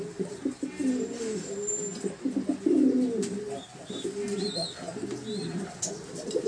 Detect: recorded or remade recorded